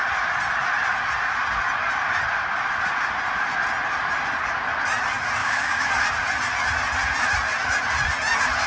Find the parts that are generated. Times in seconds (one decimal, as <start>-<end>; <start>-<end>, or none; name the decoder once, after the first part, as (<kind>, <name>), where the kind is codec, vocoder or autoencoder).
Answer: 5.4-5.9 (codec, DAC)